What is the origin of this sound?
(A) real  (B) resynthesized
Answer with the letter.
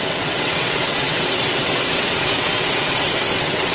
B